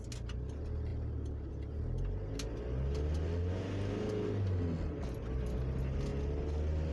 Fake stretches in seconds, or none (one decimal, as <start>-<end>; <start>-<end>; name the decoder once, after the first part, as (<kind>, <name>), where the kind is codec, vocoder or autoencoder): none